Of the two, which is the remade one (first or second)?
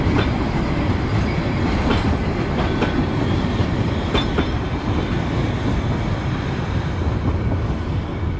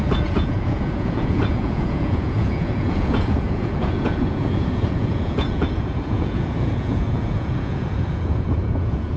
second